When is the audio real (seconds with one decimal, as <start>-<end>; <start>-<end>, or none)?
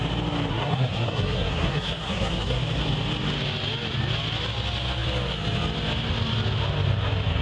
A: 0.0-0.5; 2.6-7.4